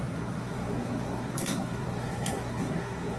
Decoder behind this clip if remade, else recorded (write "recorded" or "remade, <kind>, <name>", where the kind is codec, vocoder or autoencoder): remade, codec, SNAC